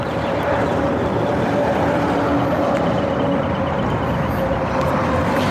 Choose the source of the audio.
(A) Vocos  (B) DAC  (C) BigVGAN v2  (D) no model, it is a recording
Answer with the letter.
D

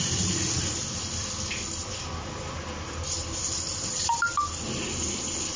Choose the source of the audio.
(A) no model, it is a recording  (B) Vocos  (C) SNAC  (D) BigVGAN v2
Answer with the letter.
A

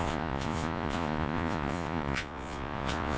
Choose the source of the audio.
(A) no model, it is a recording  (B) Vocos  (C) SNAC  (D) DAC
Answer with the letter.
B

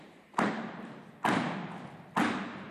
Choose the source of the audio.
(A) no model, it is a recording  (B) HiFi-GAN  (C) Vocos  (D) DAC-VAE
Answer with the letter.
A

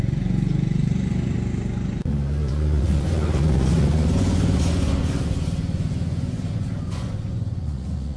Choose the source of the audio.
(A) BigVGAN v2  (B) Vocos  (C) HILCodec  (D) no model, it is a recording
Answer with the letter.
B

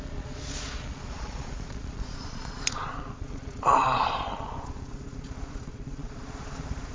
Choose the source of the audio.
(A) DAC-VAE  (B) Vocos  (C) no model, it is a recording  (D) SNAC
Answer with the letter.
B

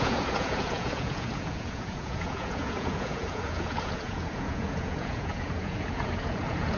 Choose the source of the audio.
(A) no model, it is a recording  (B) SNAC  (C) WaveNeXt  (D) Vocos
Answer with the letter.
D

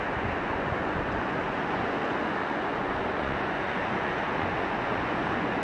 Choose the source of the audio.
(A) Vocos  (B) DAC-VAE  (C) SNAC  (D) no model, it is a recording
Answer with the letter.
A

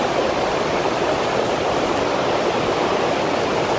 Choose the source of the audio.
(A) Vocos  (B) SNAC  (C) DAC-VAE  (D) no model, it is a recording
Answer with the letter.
D